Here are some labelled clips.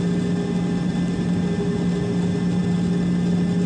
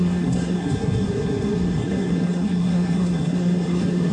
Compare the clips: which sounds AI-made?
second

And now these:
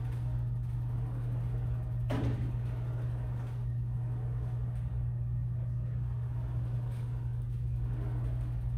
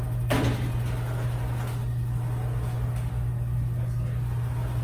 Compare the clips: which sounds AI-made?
first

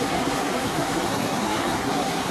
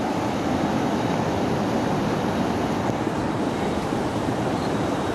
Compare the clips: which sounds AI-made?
first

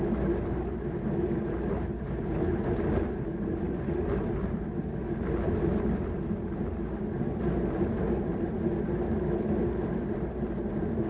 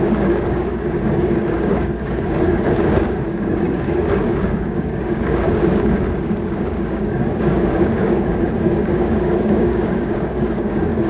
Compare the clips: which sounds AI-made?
second